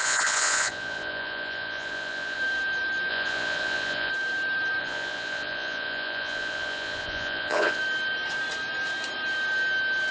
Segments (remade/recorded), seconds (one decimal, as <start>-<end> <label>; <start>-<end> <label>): 0.0-2.4 remade; 2.4-3.1 recorded; 3.1-4.1 remade; 4.1-4.8 recorded; 4.8-7.8 remade; 7.8-10.1 recorded